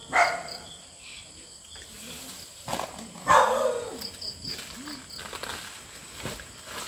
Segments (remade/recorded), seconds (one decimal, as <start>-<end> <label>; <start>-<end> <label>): 0.0-1.3 remade; 1.3-6.9 recorded